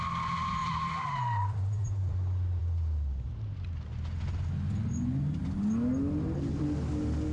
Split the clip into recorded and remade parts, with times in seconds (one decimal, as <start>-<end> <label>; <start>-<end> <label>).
0.0-0.6 recorded; 0.6-2.1 remade; 2.1-7.3 recorded